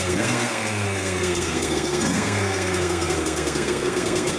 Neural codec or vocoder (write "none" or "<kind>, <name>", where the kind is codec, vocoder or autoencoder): codec, SNAC